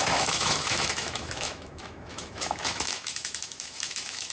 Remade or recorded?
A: remade